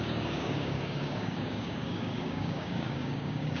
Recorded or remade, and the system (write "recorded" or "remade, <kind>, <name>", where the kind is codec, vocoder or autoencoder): remade, codec, DAC